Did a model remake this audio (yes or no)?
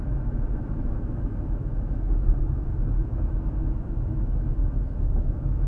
yes